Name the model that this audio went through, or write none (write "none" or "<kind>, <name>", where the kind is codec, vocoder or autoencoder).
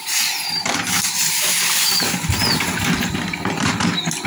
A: vocoder, BigVGAN v2